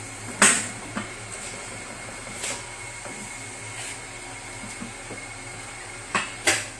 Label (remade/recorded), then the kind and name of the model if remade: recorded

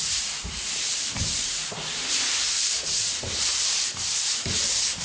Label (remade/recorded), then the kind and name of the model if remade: remade, vocoder, BigVGAN v2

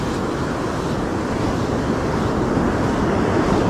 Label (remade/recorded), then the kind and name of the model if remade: recorded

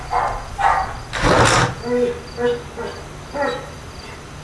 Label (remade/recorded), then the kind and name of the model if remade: recorded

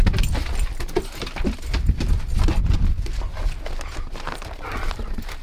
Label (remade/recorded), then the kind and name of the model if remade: recorded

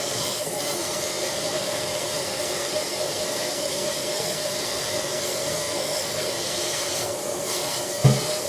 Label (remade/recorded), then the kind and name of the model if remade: remade, codec, SNAC